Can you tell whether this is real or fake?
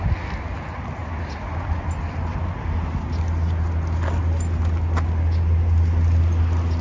real